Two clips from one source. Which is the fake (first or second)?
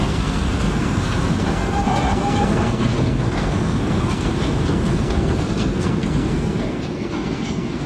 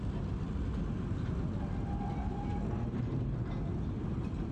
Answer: first